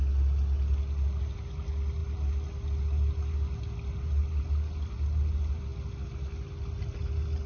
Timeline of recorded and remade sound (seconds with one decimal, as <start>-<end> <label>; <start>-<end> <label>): 0.0-7.5 recorded